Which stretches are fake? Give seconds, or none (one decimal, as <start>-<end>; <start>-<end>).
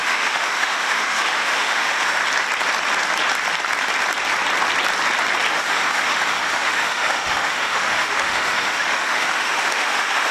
0.0-2.2; 5.5-10.3